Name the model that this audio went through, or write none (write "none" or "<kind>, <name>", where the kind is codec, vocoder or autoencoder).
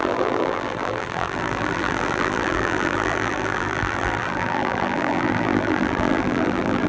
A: vocoder, BigVGAN v2